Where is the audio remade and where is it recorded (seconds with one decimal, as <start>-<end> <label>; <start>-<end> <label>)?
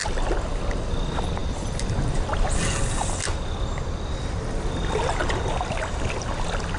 0.0-6.8 recorded